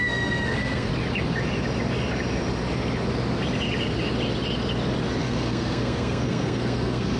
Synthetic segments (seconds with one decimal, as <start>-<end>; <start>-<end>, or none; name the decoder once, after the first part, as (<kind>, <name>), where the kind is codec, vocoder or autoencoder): 0.0-0.9 (codec, SNAC); 5.2-7.2